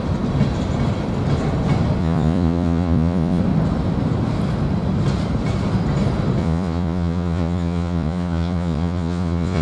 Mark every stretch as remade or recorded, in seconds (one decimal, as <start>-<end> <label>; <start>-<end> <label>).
0.0-2.0 recorded; 2.0-3.4 remade; 3.4-6.4 recorded; 6.4-9.6 remade